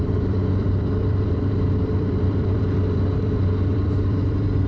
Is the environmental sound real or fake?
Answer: fake